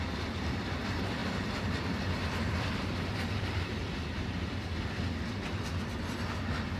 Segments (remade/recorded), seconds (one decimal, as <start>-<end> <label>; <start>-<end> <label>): 0.0-6.8 recorded